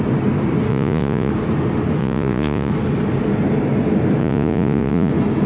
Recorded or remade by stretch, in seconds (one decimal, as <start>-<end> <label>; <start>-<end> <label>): 0.0-0.7 recorded; 0.7-1.3 remade; 1.3-2.0 recorded; 2.0-2.7 remade; 2.7-4.2 recorded; 4.2-5.1 remade; 5.1-5.5 recorded